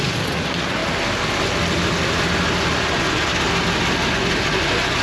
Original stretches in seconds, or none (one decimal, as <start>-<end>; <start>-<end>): 0.8-2.6; 3.3-4.1